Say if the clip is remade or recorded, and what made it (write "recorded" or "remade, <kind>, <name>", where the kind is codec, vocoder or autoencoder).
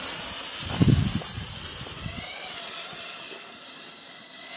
recorded